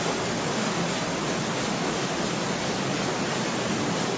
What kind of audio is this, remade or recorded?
recorded